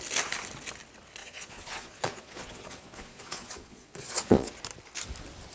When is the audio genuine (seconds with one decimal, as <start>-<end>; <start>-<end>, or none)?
0.0-1.2; 4.5-5.5